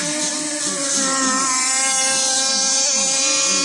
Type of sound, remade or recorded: recorded